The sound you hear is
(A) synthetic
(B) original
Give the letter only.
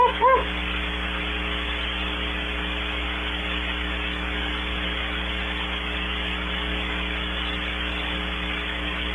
A